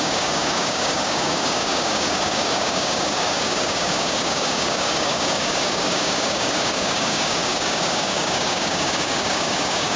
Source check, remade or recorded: remade